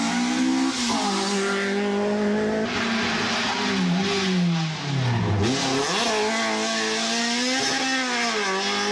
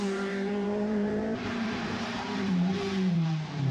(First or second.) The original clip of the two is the first